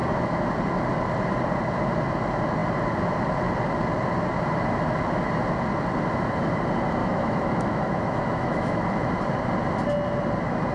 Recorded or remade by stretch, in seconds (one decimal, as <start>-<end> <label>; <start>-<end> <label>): 0.0-0.5 remade; 0.5-7.0 recorded; 7.0-8.8 remade; 8.8-10.7 recorded